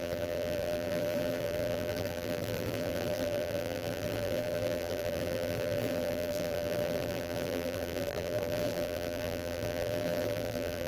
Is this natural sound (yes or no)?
no